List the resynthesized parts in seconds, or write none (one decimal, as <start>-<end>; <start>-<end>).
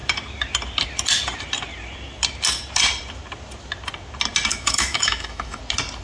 4.5-5.6